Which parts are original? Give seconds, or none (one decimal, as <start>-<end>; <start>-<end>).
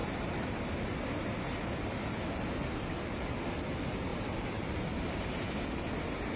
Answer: 0.7-4.1; 5.2-6.4